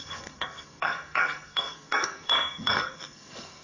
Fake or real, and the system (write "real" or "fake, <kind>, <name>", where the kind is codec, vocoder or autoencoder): fake, codec, SNAC